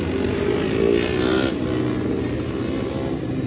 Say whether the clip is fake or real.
real